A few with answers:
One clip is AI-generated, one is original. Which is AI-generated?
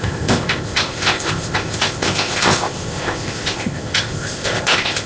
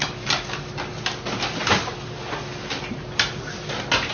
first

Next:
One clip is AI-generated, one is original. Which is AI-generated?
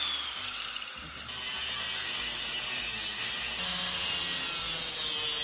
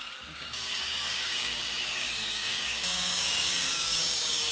second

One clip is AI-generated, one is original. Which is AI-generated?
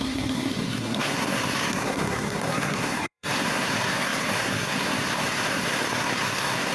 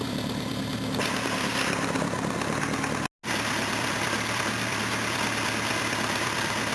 first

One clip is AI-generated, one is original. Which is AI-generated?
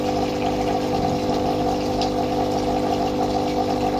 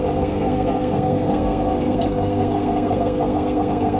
second